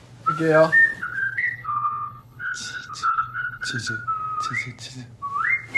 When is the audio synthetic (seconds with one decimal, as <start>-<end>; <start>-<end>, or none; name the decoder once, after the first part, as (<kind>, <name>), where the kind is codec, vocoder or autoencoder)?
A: 0.9-3.9 (codec, HILCodec)